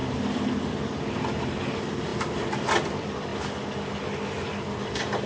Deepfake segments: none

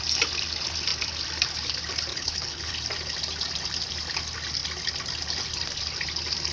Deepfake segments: 2.1-2.7 (codec, HILCodec)

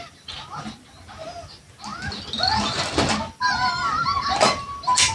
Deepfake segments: none

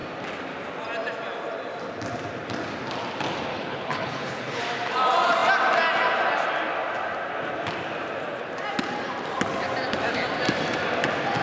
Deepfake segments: 3.5-4.6 (codec, HILCodec)

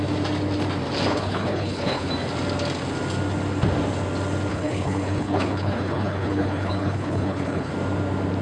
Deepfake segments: 1.1-2.1 (codec, HILCodec); 4.5-7.7

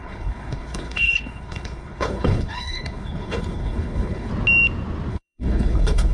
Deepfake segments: 0.0-4.3 (codec, HILCodec); 5.1-6.1

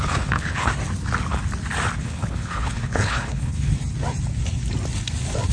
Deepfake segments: 0.0-0.7 (codec, HILCodec); 2.0-3.7